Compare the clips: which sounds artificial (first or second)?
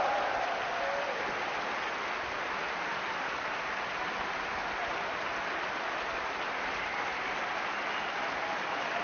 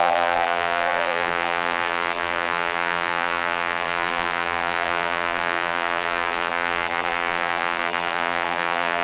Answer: second